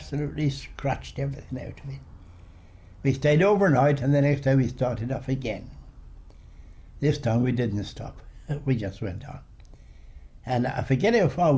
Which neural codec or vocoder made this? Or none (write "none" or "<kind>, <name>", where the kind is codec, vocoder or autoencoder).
none